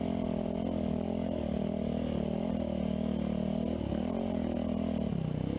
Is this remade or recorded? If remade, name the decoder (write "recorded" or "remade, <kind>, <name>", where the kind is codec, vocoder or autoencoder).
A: recorded